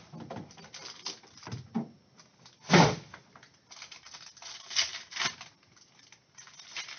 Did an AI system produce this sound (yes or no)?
no